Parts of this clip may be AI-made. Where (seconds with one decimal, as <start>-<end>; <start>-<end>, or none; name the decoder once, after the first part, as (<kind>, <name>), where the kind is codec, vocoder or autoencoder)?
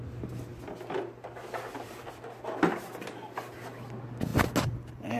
none